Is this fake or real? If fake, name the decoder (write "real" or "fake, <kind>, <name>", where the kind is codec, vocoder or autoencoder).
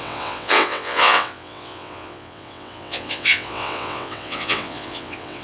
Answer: fake, vocoder, WaveNeXt